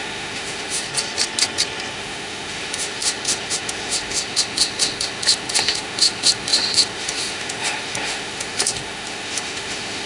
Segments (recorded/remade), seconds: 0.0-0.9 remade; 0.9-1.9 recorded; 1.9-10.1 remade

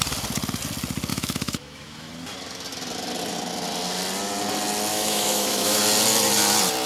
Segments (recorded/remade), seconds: 0.0-1.1 recorded; 1.1-2.1 remade; 2.1-4.9 recorded; 4.9-5.8 remade; 5.8-6.9 recorded

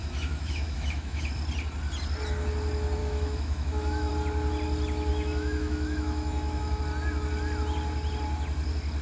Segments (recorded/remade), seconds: 0.0-1.3 remade; 1.3-3.0 recorded; 3.0-4.1 remade; 4.1-5.1 recorded; 5.1-6.8 remade; 6.8-9.0 recorded

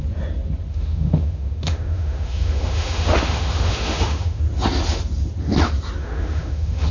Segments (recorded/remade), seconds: 0.0-0.7 recorded; 0.7-4.4 remade; 4.4-6.0 recorded; 6.0-6.9 remade

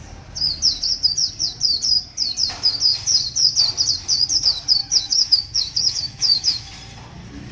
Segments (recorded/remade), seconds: 0.0-4.8 recorded; 4.8-6.7 remade; 6.7-7.5 recorded